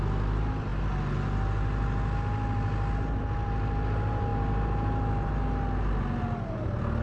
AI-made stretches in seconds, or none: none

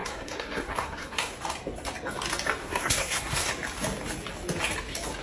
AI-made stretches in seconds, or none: 0.0-1.3 (codec, SNAC); 2.6-3.5

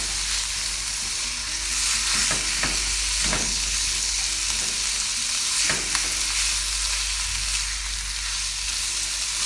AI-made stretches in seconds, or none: 3.3-4.2 (codec, HILCodec)

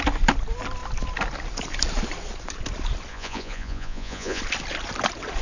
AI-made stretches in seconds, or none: 3.1-4.4 (vocoder, Vocos)

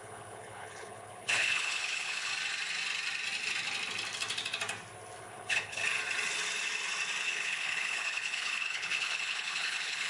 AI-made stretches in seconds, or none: 0.0-2.3 (codec, HILCodec); 5.2-5.8; 7.2-10.1

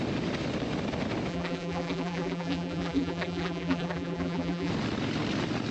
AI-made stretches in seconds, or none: 1.3-4.7 (vocoder, BigVGAN v2)

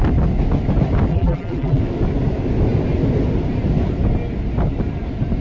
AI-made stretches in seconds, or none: 1.1-1.8 (vocoder, BigVGAN v2)

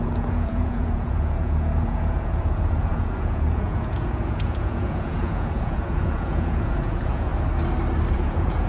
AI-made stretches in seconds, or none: 0.0-7.3 (vocoder, Vocos); 8.1-8.7